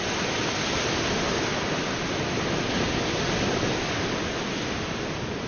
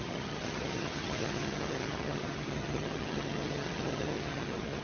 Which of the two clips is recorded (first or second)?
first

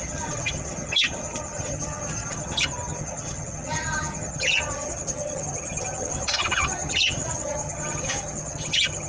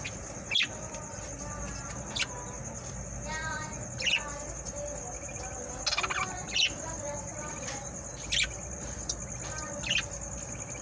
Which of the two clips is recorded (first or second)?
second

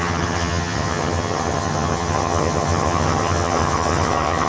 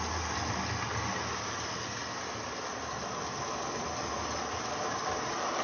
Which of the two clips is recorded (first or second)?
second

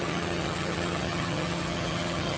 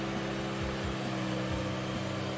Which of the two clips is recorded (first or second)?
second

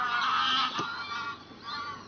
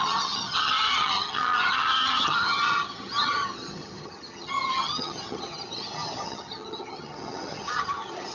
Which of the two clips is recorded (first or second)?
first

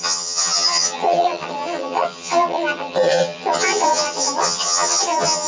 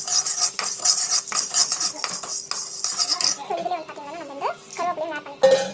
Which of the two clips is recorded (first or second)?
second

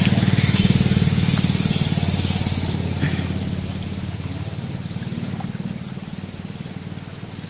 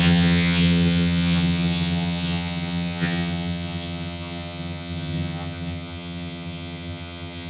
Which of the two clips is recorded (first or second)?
first